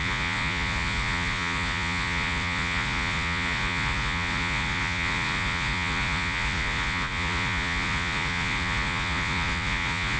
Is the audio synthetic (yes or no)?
yes